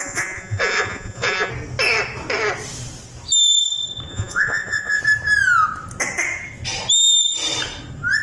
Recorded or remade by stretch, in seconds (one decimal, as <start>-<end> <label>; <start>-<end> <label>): 0.0-1.5 remade; 1.5-4.1 recorded; 4.1-5.0 remade; 5.0-8.2 recorded